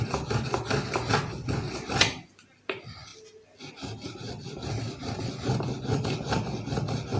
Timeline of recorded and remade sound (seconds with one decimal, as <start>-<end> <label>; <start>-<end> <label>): 0.0-7.2 recorded